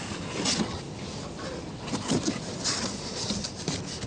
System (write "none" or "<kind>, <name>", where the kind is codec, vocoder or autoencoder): none